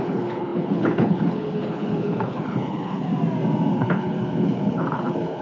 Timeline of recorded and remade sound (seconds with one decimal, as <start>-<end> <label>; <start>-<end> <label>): 0.0-3.1 remade; 3.1-3.7 recorded; 3.7-5.4 remade